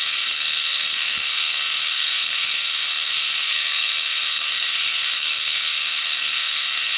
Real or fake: fake